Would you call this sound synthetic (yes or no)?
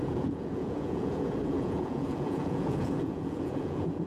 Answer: yes